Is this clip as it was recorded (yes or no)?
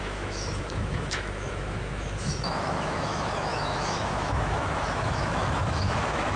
no